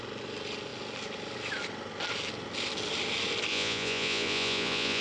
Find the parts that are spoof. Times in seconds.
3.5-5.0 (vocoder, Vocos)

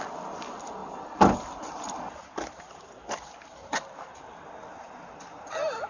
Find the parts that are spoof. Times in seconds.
0.8-2.9 (vocoder, BigVGAN v2); 4.6-5.2

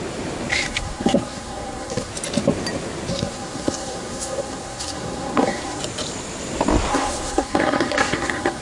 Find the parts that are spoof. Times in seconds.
0.5-2.1 (codec, SNAC); 3.1-5.8; 6.9-8.6

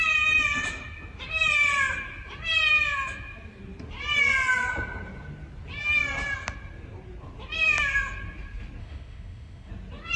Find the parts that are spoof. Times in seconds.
8.8-9.7 (autoencoder, DAC-VAE)